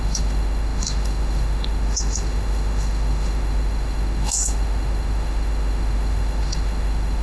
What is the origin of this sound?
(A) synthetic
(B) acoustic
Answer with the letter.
A